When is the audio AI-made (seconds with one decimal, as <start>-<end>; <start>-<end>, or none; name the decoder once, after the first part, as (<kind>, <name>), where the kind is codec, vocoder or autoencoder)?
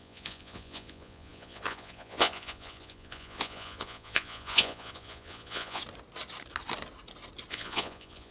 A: 0.0-5.8 (vocoder, Vocos); 7.5-8.3